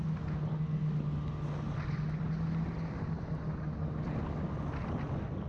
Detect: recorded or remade recorded